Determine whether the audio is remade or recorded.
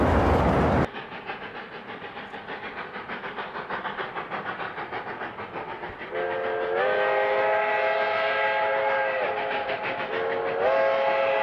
recorded